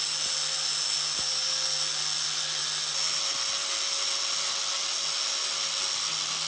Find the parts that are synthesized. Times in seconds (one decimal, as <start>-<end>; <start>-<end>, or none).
none